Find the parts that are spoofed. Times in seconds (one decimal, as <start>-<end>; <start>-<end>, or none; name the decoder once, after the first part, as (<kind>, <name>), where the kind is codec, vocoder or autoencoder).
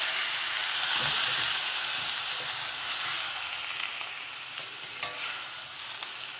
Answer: none